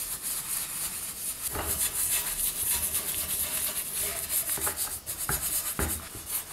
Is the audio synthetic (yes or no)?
no